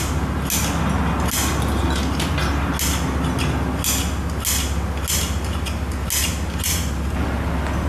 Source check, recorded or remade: recorded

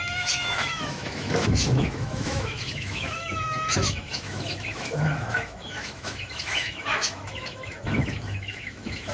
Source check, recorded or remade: remade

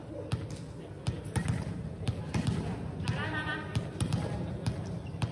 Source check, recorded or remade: recorded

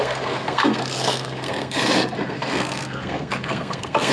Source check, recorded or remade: remade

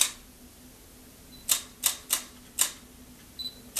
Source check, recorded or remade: recorded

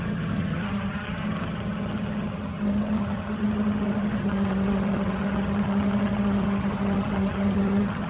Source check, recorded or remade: remade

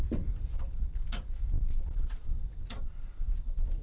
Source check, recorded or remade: recorded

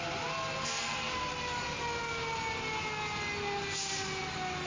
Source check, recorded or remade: recorded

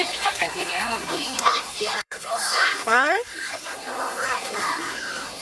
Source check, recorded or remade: remade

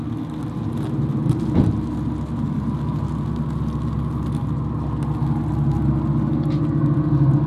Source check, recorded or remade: recorded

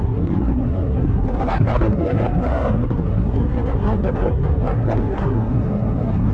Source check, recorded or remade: remade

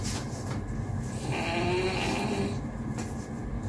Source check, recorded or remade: recorded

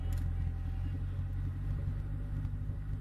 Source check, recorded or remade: recorded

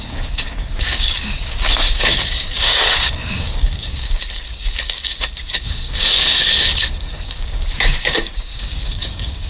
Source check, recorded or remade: remade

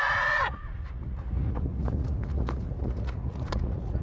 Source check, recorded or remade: remade